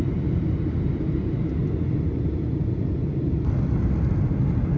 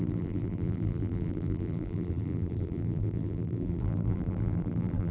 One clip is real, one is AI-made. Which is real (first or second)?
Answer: first